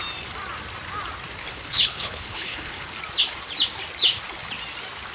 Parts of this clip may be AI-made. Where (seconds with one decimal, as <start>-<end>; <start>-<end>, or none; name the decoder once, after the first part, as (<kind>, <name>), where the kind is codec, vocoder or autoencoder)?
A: 1.4-2.8 (codec, HILCodec)